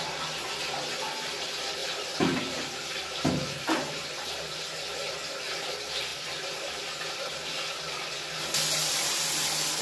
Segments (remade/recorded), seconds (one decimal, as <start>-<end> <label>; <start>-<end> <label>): 0.0-1.8 recorded; 1.8-4.6 remade; 4.6-9.8 recorded